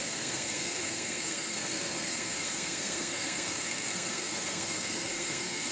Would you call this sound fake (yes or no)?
yes